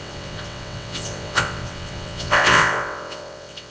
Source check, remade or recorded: remade